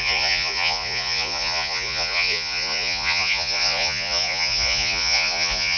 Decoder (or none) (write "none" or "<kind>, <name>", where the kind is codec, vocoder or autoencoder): vocoder, Vocos